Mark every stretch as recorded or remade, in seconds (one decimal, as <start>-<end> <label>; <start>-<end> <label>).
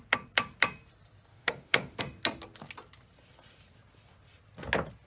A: 0.0-1.3 recorded; 1.3-2.0 remade; 2.0-5.1 recorded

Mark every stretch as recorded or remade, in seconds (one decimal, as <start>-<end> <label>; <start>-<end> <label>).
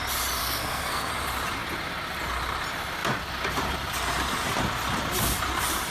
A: 0.0-0.4 recorded; 0.4-1.1 remade; 1.1-5.9 recorded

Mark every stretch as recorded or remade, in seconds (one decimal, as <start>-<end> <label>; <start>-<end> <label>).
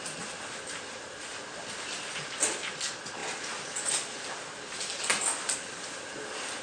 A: 0.0-6.6 recorded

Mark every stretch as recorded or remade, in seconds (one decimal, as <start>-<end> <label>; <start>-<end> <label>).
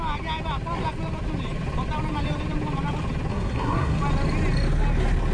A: 0.0-3.3 recorded; 3.3-4.0 remade; 4.0-5.3 recorded